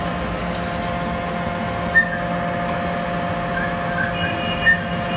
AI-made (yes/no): no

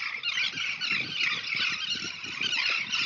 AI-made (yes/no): no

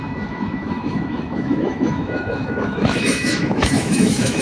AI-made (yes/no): yes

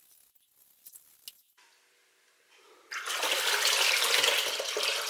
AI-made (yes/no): no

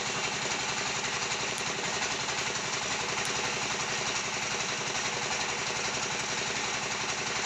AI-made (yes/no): no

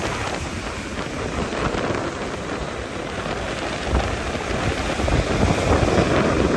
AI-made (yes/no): no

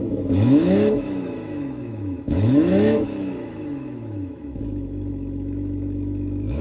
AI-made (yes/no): yes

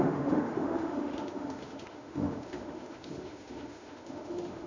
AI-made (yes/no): yes